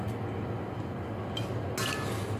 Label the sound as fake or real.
real